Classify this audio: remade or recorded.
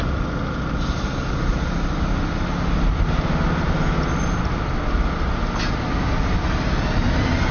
recorded